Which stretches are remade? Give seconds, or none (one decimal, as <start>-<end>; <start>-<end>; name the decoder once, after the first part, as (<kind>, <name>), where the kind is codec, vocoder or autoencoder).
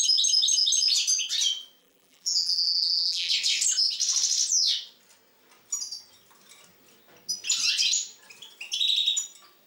1.8-3.3 (vocoder, BigVGAN v2)